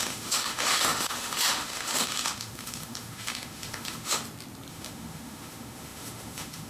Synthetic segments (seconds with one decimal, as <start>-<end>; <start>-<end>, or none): 0.0-4.2; 4.7-6.7